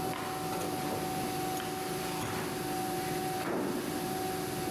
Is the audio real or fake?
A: real